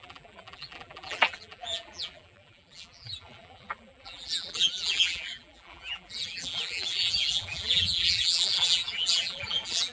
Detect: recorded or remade remade